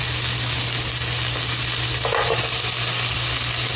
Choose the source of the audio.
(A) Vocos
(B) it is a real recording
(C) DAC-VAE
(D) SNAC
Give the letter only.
B